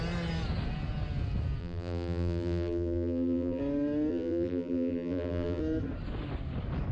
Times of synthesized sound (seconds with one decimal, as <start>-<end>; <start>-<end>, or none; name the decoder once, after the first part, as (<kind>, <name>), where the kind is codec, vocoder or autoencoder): 1.6-3.6 (vocoder, BigVGAN v2); 4.1-5.6